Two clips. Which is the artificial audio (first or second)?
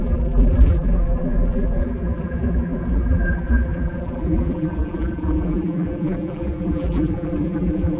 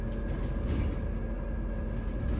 first